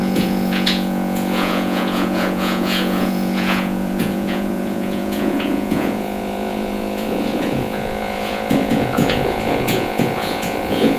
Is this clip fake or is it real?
fake